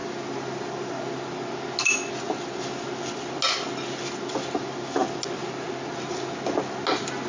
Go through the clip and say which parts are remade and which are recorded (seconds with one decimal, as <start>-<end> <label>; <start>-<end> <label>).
0.0-7.3 recorded